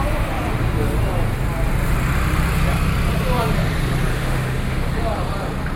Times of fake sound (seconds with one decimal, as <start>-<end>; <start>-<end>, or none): 4.1-4.9